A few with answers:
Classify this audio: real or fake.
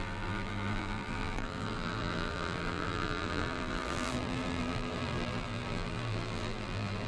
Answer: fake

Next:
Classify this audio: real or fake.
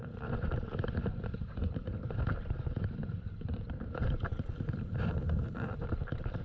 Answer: fake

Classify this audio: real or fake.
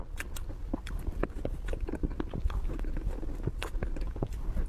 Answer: real